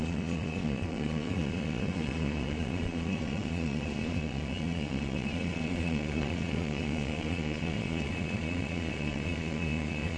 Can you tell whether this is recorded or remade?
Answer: remade